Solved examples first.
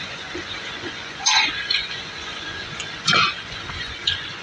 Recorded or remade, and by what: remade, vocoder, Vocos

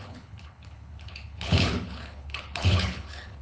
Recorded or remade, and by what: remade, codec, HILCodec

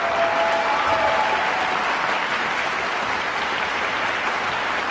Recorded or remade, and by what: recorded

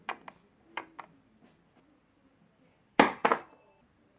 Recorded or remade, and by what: recorded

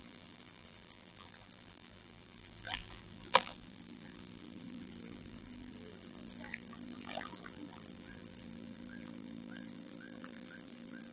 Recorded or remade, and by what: remade, vocoder, BigVGAN v2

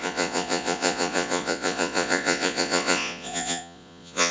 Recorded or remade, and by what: remade, vocoder, Vocos